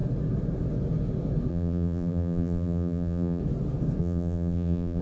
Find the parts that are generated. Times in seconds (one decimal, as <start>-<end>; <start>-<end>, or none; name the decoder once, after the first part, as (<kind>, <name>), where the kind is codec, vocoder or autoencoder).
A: 1.5-3.4 (vocoder, BigVGAN v2); 4.0-5.0